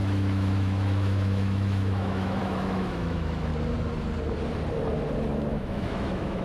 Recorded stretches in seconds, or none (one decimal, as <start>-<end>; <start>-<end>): 3.5-5.5